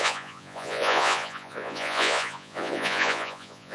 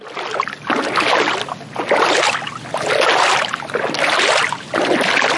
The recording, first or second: second